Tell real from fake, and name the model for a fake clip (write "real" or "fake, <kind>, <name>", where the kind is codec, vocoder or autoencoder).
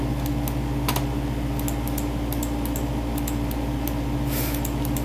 real